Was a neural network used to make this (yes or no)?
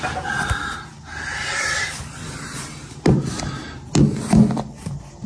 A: no